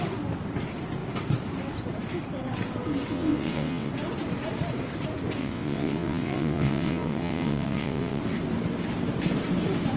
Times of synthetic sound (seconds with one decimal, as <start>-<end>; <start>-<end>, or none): 3.1-3.9; 5.4-8.2